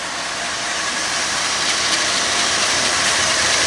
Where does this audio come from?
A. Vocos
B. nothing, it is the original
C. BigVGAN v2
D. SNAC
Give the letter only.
C